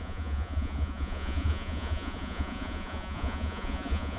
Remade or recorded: remade